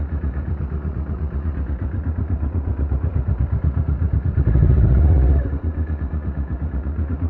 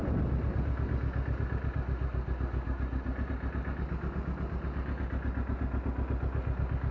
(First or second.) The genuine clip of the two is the second